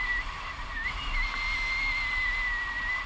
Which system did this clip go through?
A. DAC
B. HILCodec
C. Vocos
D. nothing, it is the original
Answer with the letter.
D